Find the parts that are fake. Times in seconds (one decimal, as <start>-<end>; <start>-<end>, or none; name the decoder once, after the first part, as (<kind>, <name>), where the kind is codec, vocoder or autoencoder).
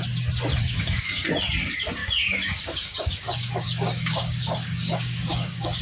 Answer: 0.6-1.3 (codec, DAC); 2.0-5.8